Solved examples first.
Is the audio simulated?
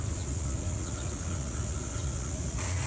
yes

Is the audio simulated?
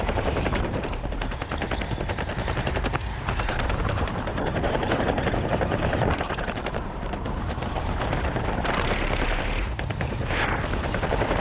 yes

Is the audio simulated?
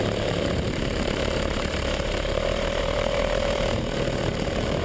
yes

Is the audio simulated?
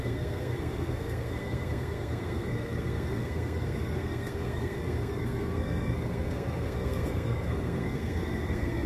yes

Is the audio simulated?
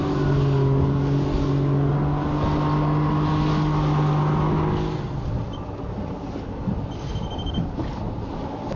no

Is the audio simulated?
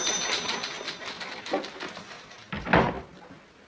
no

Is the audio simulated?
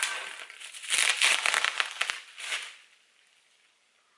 no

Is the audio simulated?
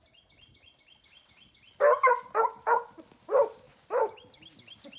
no